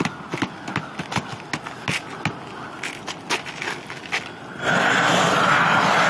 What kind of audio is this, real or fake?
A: real